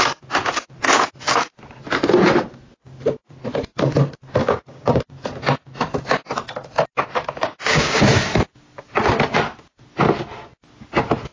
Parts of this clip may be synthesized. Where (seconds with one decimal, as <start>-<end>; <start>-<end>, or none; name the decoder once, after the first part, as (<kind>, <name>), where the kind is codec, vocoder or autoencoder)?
4.4-5.0 (codec, DAC); 7.4-8.0